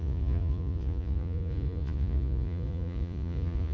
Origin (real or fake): fake